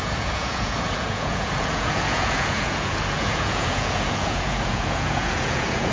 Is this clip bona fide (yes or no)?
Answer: no